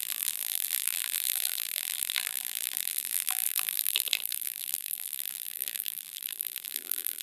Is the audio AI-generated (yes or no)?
yes